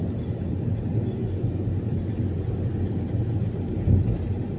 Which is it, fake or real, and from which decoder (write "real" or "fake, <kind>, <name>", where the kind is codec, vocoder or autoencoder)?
real